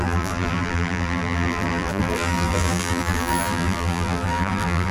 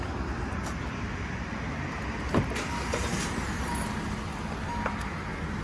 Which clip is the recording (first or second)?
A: second